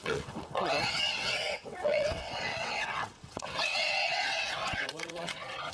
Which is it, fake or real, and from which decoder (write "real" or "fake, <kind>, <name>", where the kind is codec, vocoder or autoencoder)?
fake, vocoder, WaveNeXt